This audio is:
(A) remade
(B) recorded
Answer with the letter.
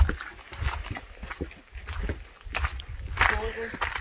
B